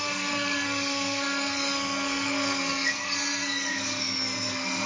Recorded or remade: remade